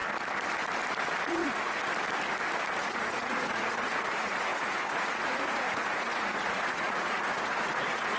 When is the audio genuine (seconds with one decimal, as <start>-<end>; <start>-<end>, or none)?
0.0-1.3; 1.9-2.8